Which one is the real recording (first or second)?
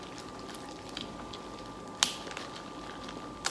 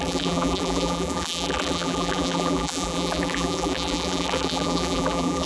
first